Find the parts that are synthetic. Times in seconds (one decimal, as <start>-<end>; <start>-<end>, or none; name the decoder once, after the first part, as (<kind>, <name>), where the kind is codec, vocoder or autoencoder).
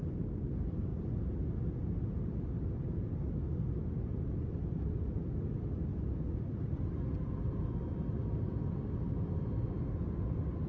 none